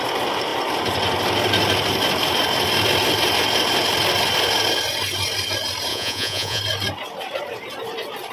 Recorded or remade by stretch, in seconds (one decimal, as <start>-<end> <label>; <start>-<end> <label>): 0.0-5.9 recorded; 5.9-6.6 remade; 6.6-8.3 recorded